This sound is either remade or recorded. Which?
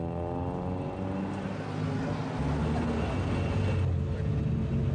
recorded